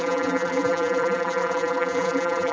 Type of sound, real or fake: fake